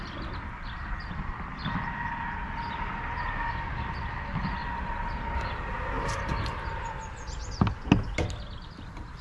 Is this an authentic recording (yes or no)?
yes